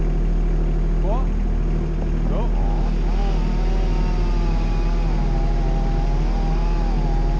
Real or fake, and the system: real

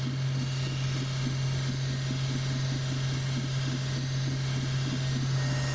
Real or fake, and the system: real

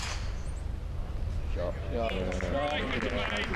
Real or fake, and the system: real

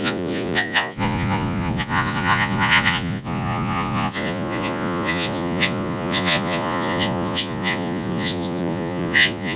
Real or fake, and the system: fake, vocoder, Vocos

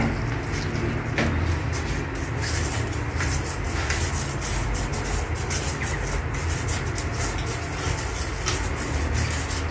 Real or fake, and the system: real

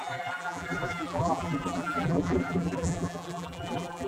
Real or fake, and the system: fake, vocoder, BigVGAN v2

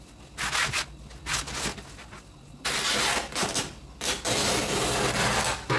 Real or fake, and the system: real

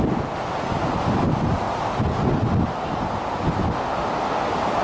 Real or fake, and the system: real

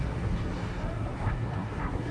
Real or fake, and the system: fake, codec, SNAC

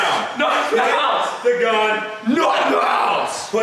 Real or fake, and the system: real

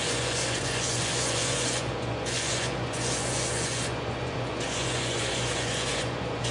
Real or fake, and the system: fake, vocoder, Vocos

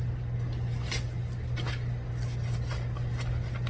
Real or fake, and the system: real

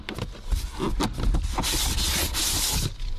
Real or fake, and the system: real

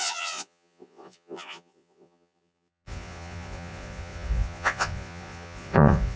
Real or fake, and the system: fake, vocoder, Vocos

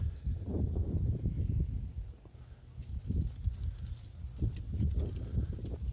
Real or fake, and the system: real